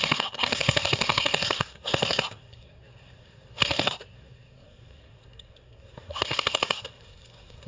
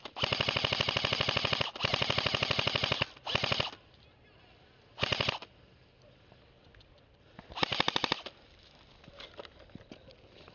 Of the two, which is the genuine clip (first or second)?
second